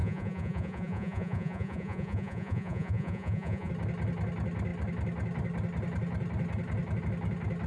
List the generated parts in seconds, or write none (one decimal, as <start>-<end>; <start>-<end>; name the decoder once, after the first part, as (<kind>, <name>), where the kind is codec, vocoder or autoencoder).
0.0-3.7 (vocoder, Vocos)

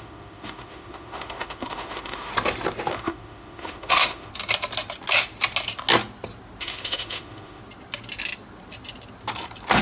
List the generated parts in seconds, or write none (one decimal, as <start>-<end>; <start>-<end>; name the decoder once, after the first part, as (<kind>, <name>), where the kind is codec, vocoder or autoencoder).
0.0-2.3 (autoencoder, DAC-VAE); 2.9-4.3; 6.6-7.6

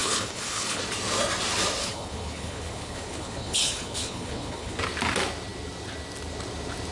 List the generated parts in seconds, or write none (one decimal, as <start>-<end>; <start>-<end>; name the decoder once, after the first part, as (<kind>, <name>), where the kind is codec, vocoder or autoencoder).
0.0-0.8 (codec, HILCodec); 1.8-4.8

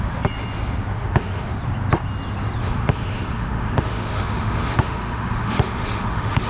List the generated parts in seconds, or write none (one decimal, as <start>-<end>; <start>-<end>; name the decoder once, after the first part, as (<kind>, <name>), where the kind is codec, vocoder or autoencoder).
0.9-1.6 (autoencoder, DAC-VAE); 2.6-6.5

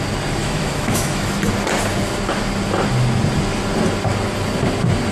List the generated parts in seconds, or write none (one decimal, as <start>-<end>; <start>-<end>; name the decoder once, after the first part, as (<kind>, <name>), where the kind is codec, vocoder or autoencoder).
0.4-1.3 (autoencoder, DAC-VAE)

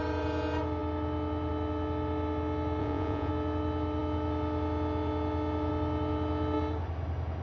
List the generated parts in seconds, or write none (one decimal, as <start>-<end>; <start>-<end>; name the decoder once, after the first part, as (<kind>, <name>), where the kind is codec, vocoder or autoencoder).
2.8-3.3 (vocoder, Vocos)

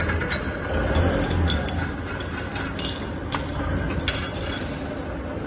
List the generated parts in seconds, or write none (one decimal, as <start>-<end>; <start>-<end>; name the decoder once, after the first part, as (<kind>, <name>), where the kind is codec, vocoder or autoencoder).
none

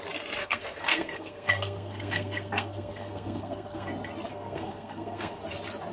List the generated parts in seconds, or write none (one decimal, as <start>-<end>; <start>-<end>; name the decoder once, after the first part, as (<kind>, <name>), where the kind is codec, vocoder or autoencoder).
0.4-3.9 (codec, SNAC); 4.3-5.4